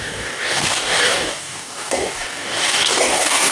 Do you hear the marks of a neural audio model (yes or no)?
yes